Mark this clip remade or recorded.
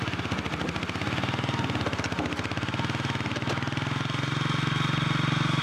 recorded